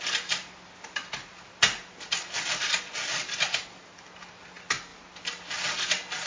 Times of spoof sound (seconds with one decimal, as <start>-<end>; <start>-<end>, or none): none